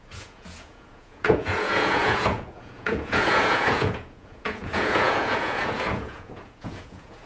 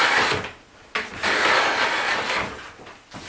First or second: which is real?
second